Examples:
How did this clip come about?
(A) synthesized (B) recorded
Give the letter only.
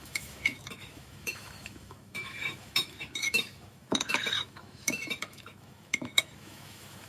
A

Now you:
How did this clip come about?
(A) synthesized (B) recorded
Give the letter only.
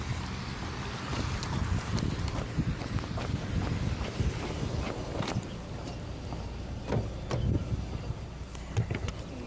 B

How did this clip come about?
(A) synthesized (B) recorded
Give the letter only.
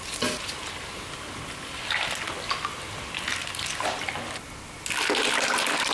B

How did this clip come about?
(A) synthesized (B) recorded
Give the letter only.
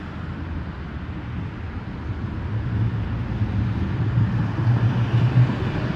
B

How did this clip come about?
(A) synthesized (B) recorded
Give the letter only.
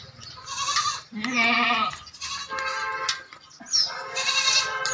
B